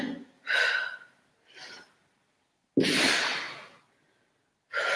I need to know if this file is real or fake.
real